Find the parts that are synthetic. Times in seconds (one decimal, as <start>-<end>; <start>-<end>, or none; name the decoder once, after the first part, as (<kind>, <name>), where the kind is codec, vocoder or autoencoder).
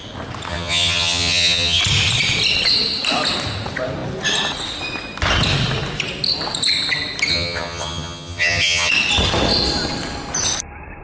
0.5-1.8 (vocoder, HiFi-GAN); 7.3-8.9